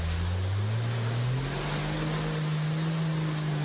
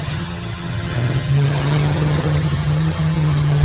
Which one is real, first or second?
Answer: first